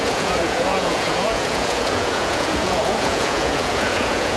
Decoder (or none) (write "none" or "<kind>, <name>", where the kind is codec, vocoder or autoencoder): vocoder, Vocos